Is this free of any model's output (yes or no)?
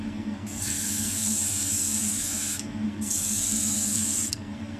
no